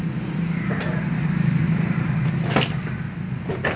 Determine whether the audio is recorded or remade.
recorded